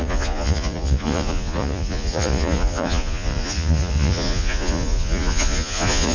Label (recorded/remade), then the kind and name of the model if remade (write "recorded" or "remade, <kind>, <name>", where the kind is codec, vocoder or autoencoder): remade, vocoder, Vocos